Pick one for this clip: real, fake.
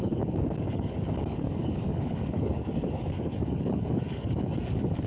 fake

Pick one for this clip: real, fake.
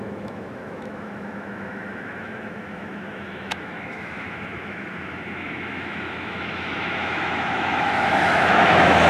fake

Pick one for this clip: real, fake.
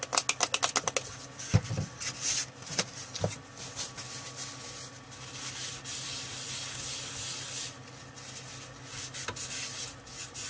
real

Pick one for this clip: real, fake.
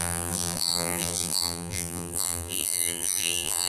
fake